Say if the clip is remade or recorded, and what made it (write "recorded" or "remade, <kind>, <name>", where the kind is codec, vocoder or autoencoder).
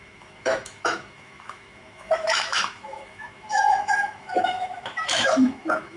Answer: remade, autoencoder, DAC-VAE